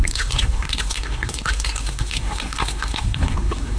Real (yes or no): no